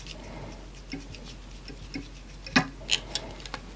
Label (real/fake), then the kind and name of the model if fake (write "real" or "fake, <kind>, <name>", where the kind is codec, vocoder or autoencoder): real